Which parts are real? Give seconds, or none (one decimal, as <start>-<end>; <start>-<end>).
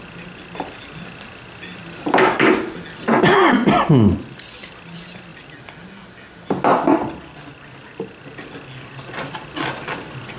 0.0-10.4